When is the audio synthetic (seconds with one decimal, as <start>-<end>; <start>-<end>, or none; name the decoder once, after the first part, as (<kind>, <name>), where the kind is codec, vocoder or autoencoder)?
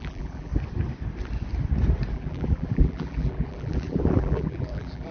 0.0-0.5 (vocoder, BigVGAN v2); 2.1-5.1